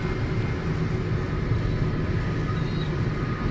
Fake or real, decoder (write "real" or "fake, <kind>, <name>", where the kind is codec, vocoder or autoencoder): real